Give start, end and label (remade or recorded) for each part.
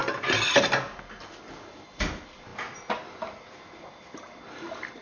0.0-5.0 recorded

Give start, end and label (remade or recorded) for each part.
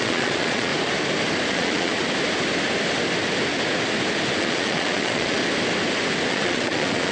0.0-0.7 remade; 0.7-1.5 recorded; 1.5-1.9 remade; 1.9-4.4 recorded; 4.4-5.4 remade; 5.4-6.3 recorded; 6.3-7.1 remade